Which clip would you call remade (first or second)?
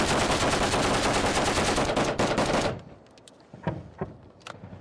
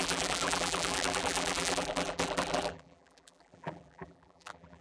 second